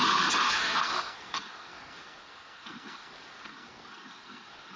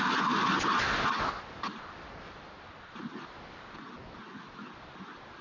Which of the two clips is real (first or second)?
second